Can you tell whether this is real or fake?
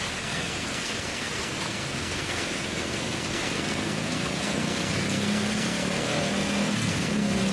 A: fake